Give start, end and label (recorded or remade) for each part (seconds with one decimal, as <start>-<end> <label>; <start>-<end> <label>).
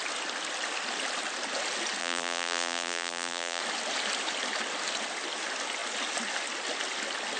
0.0-2.0 recorded; 2.0-3.6 remade; 3.6-7.4 recorded